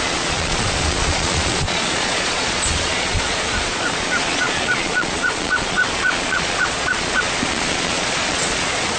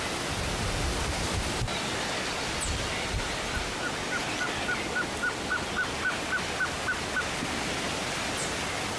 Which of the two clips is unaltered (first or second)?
second